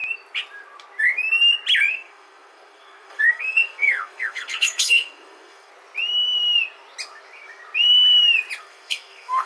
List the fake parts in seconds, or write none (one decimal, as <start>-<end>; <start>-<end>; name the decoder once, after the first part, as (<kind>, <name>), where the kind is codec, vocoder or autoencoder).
1.9-5.7 (codec, SNAC); 8.6-9.5